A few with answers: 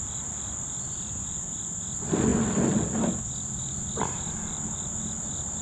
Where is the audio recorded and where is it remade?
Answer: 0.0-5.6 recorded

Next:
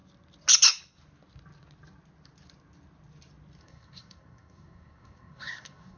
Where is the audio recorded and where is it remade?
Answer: 0.0-3.6 recorded; 3.6-6.0 remade

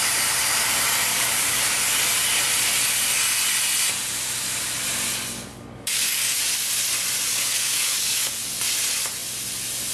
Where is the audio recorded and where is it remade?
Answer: 0.0-1.1 recorded; 1.1-1.6 remade; 1.6-5.5 recorded; 5.5-6.4 remade; 6.4-7.3 recorded; 7.3-8.5 remade; 8.5-9.9 recorded

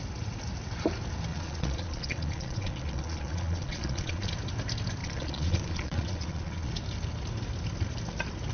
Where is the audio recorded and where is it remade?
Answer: 0.0-1.3 recorded; 1.3-4.3 remade; 4.3-5.0 recorded; 5.0-6.7 remade; 6.7-8.5 recorded

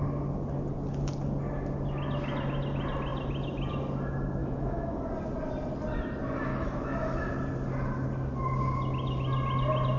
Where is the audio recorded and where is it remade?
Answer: 0.0-4.4 recorded; 4.4-5.1 remade; 5.1-6.5 recorded; 6.5-7.3 remade; 7.3-10.0 recorded

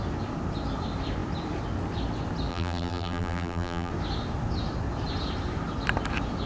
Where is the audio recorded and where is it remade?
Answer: 0.0-2.5 recorded; 2.5-3.9 remade; 3.9-6.5 recorded